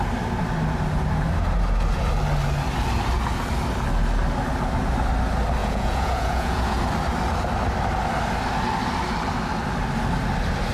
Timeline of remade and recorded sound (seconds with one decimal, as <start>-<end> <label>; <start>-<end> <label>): 0.0-5.6 recorded; 5.6-6.8 remade; 6.8-10.7 recorded